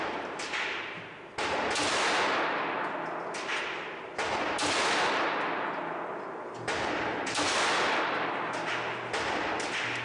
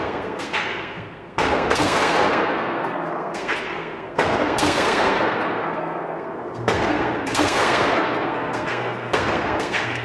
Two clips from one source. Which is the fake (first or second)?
second